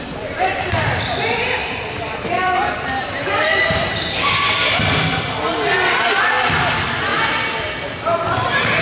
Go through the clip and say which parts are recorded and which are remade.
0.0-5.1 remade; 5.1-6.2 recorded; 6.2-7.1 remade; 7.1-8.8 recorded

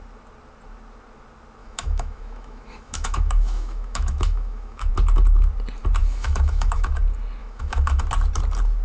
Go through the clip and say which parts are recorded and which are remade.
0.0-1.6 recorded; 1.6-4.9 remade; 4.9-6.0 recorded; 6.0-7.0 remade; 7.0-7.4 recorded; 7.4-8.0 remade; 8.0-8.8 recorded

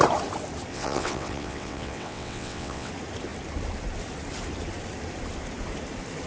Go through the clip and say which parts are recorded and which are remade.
0.0-0.7 recorded; 0.7-2.9 remade; 2.9-6.3 recorded

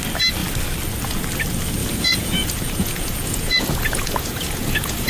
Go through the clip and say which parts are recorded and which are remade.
0.0-1.8 recorded; 1.8-5.1 remade

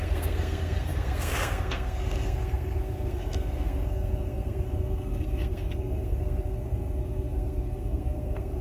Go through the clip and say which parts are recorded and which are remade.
0.0-8.6 remade

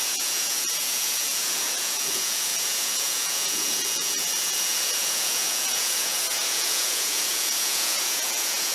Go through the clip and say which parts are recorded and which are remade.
0.0-8.7 remade